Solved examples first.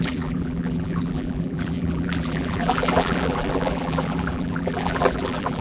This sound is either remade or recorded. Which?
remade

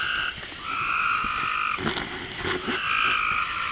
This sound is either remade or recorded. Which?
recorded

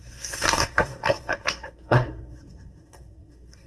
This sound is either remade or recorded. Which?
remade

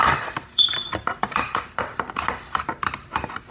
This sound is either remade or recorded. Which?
recorded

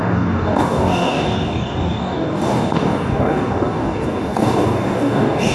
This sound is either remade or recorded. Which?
remade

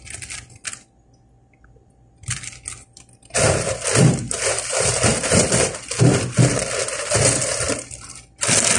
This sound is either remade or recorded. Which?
recorded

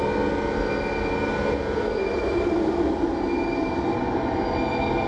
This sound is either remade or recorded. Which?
recorded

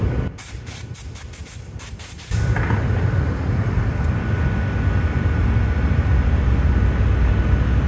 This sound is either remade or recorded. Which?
recorded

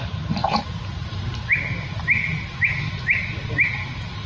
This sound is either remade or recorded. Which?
recorded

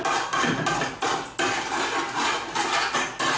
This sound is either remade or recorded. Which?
recorded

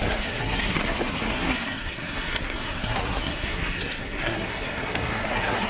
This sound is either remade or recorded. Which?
remade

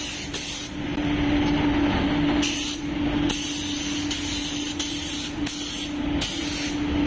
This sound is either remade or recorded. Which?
recorded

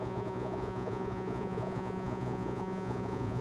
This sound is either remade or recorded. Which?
remade